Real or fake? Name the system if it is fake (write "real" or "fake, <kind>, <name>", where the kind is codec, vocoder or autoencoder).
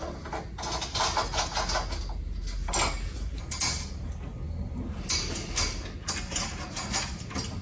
real